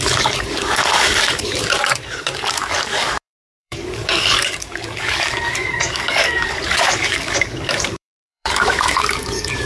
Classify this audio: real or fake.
fake